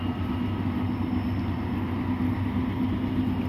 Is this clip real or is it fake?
real